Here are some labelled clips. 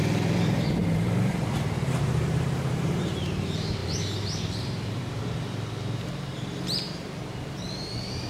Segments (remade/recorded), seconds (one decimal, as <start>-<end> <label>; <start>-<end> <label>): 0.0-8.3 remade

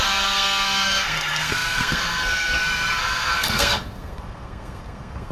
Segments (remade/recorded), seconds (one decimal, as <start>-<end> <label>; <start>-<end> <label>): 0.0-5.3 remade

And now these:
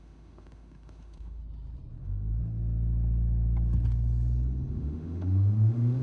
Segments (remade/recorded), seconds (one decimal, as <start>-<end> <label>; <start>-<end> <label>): 0.0-1.4 remade; 1.4-2.0 recorded; 2.0-2.4 remade; 2.4-4.7 recorded; 4.7-6.0 remade